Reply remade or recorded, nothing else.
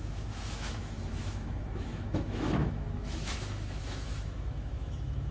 remade